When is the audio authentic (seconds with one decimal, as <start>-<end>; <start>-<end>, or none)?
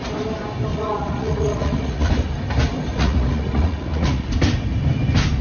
0.0-0.7; 2.1-2.9; 4.3-5.4